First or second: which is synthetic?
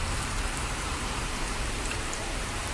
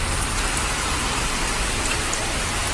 first